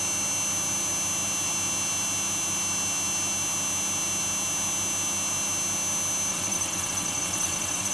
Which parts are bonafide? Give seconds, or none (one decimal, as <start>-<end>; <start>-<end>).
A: 0.0-6.3